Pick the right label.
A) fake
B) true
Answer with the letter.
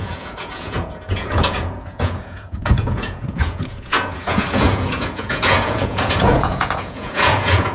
A